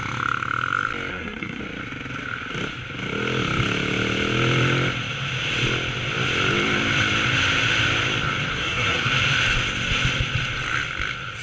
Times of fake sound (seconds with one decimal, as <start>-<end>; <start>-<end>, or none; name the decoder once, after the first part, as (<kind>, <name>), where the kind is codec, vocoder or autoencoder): 1.1-1.6 (codec, SNAC); 8.5-9.1